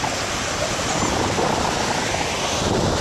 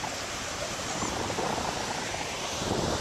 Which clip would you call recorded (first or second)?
first